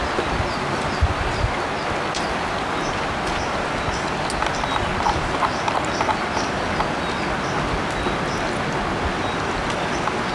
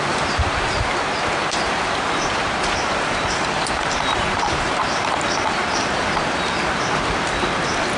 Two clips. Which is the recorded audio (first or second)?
first